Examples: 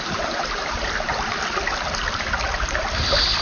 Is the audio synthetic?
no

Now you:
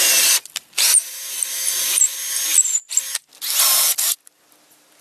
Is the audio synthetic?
no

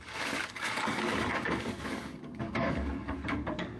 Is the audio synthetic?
yes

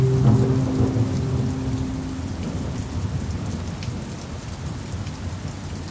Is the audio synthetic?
no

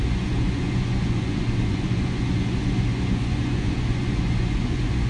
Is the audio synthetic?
yes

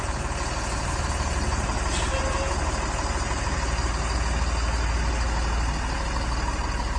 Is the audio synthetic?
no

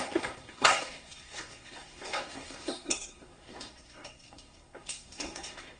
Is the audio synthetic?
yes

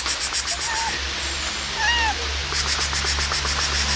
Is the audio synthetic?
no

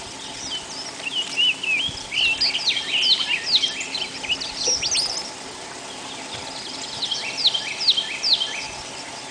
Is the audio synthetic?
no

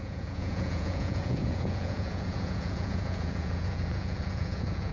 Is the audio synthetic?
yes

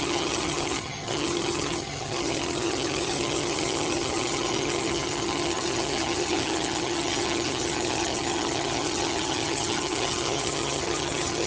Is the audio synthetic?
yes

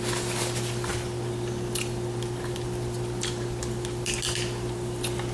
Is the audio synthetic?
no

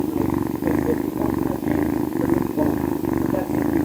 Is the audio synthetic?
yes